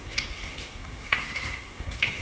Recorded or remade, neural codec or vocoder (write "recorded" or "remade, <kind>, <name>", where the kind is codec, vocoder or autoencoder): remade, codec, SNAC